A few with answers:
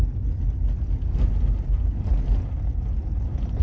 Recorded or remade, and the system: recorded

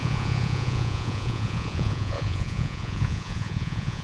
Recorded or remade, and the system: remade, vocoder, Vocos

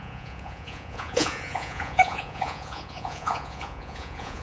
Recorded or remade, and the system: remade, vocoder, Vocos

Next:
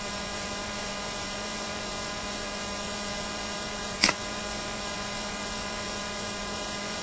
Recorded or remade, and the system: remade, vocoder, Vocos